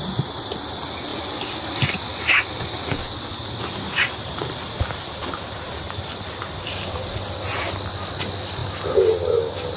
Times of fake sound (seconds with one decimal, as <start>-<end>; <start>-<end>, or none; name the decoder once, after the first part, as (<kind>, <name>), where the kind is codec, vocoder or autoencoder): none